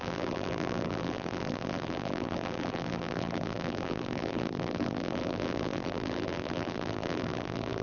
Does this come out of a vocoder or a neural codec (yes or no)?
yes